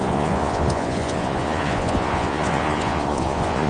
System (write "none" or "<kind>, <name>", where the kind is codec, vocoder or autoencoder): vocoder, Vocos